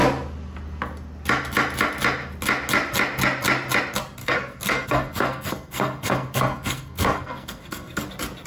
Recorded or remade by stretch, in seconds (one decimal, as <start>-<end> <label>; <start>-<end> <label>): 0.0-4.2 recorded; 4.2-8.1 remade; 8.1-8.5 recorded